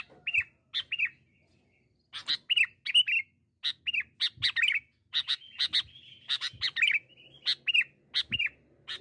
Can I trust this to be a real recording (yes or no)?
yes